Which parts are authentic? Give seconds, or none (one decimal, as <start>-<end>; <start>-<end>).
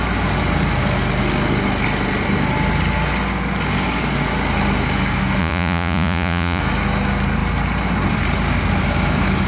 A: 0.0-5.4; 6.6-9.5